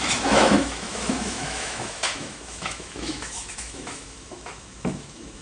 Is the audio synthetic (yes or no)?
yes